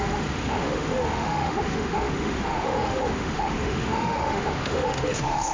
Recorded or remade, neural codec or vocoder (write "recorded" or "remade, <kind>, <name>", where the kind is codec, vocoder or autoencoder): remade, autoencoder, DAC-VAE